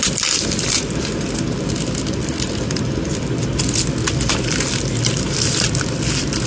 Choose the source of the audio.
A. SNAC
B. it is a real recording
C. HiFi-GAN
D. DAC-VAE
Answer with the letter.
B